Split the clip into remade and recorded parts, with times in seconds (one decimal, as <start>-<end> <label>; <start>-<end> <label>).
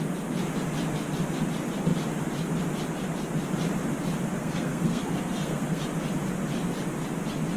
0.0-4.4 recorded; 4.4-5.8 remade; 5.8-7.6 recorded